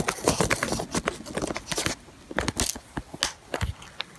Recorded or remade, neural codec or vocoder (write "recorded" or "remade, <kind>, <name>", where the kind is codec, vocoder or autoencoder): recorded